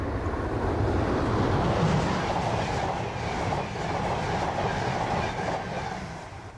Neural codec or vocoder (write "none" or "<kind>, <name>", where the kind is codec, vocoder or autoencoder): none